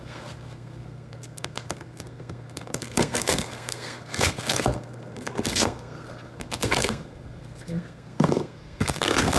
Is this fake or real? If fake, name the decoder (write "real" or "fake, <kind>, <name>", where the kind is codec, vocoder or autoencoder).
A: fake, codec, SNAC